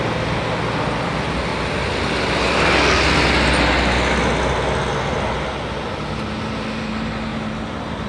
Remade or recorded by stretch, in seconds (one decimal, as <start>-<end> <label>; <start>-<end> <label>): 0.0-8.1 recorded